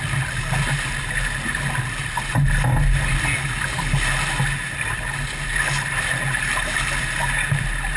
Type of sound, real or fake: real